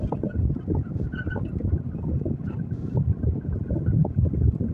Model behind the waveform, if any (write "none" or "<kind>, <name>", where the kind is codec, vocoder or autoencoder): none